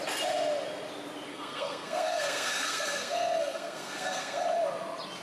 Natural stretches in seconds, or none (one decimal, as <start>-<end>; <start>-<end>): 0.0-1.3; 4.4-5.2